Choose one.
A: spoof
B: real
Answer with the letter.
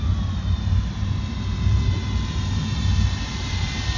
A